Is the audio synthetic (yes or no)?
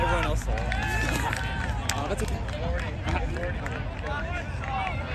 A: no